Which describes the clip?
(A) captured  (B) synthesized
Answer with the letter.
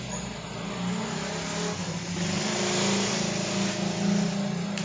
A